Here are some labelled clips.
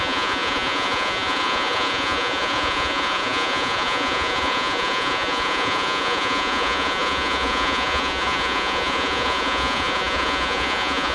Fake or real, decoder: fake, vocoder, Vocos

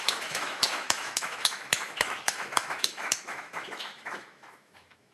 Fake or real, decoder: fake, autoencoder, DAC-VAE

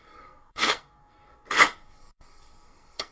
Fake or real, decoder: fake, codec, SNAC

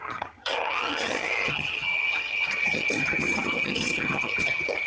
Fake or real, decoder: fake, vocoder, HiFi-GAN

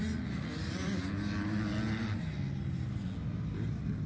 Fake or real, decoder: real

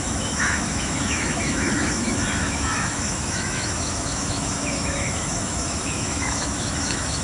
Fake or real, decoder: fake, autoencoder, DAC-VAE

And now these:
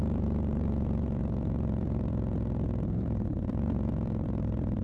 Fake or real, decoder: fake, vocoder, BigVGAN v2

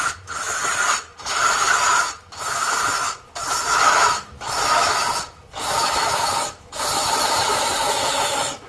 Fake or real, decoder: fake, autoencoder, DAC-VAE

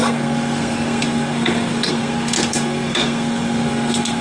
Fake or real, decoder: fake, codec, SNAC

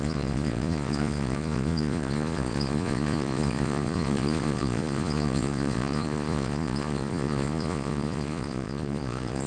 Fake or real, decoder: fake, vocoder, Vocos